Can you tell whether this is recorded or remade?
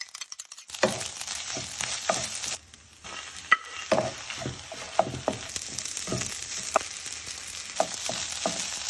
recorded